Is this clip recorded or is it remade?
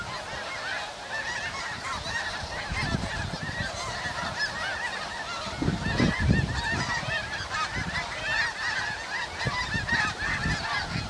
recorded